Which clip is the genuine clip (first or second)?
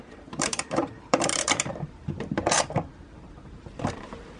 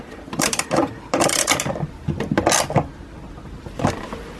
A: second